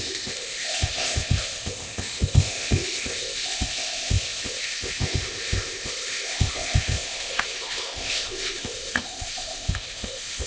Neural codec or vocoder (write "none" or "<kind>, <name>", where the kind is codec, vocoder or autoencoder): codec, ZipCodec